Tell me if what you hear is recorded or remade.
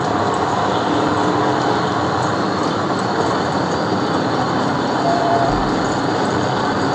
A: remade